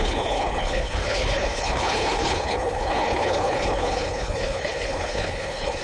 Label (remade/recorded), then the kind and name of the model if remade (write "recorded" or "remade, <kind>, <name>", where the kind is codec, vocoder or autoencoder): remade, codec, HILCodec